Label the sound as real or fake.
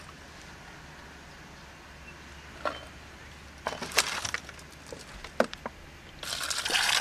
real